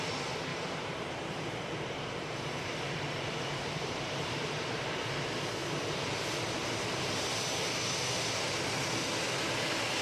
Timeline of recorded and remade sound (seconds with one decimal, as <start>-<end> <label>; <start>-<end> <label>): 0.0-0.5 recorded; 0.5-4.9 remade; 4.9-10.0 recorded